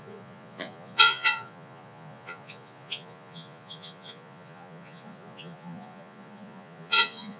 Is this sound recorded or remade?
remade